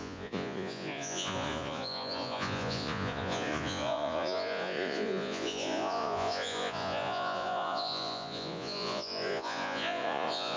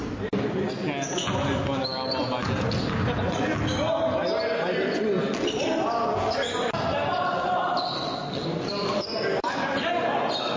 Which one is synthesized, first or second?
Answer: first